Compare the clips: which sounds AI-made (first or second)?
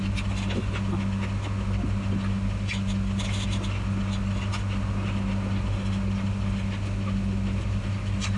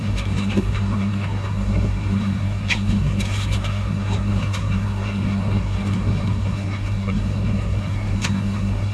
second